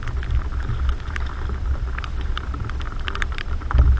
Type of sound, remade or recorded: recorded